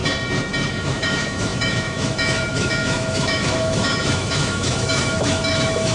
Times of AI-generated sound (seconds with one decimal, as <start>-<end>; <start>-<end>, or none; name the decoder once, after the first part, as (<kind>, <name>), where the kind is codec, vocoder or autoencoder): 0.7-5.9 (autoencoder, DAC-VAE)